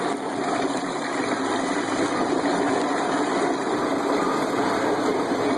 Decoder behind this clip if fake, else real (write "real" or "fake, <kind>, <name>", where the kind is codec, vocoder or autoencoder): real